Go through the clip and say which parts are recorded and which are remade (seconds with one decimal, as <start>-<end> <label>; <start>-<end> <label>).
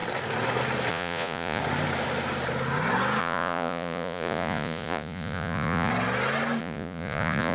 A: 0.0-0.9 recorded; 0.9-1.6 remade; 1.6-3.2 recorded; 3.2-5.9 remade; 5.9-6.6 recorded; 6.6-7.5 remade